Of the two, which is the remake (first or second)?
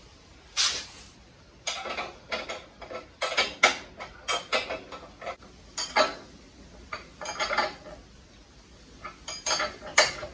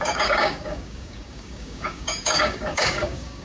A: second